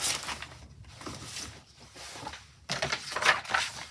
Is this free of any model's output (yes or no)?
yes